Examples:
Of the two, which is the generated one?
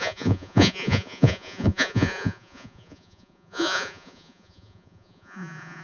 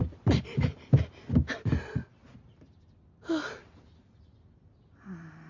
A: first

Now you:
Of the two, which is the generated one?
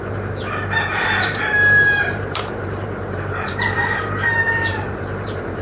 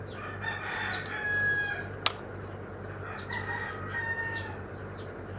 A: first